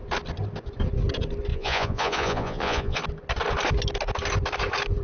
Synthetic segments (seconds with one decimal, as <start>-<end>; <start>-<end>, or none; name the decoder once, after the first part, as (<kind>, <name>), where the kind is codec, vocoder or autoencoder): 1.5-3.0 (vocoder, Vocos)